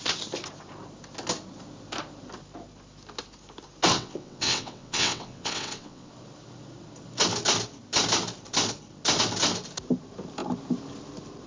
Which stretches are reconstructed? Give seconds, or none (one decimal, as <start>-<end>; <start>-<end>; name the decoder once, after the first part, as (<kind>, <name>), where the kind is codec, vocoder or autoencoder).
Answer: 3.9-6.1 (vocoder, WaveNeXt)

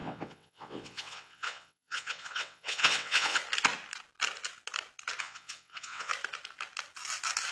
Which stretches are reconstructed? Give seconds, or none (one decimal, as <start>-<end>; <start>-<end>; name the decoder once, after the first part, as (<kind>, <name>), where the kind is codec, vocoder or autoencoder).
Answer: 0.0-3.4 (vocoder, WaveNeXt); 5.2-6.1

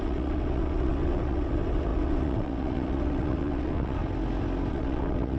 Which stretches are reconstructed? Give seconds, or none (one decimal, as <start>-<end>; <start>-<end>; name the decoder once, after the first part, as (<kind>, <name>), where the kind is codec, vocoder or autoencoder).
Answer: 0.0-4.0 (vocoder, WaveNeXt); 4.7-5.4

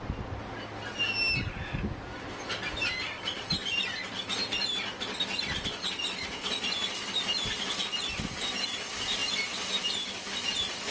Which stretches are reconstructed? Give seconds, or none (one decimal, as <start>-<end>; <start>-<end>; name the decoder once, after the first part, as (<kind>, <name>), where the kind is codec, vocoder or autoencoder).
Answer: none

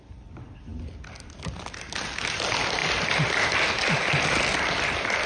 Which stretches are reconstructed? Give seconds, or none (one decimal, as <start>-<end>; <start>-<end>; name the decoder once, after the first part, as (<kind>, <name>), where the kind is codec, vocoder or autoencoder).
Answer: none